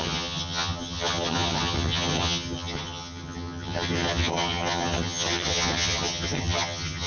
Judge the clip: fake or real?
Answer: fake